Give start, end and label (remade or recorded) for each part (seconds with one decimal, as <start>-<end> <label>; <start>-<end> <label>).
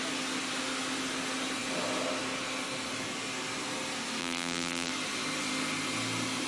0.0-4.2 recorded; 4.2-4.9 remade; 4.9-6.5 recorded